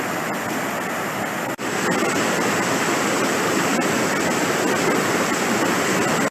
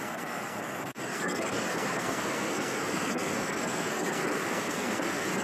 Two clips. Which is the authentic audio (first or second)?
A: first